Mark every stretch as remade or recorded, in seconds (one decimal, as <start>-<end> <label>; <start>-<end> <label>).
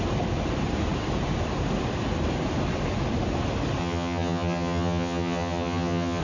0.0-3.8 recorded; 3.8-6.2 remade